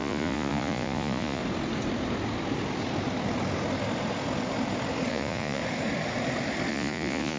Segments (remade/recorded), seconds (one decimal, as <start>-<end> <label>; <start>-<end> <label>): 0.0-1.4 remade; 1.4-5.1 recorded; 5.1-5.6 remade; 5.6-6.7 recorded; 6.7-7.4 remade